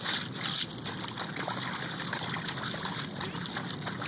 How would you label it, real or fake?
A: real